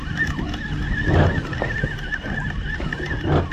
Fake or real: real